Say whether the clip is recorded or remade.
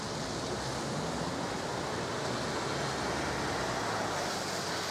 recorded